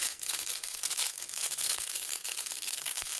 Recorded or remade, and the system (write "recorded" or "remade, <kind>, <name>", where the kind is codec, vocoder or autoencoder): remade, codec, SNAC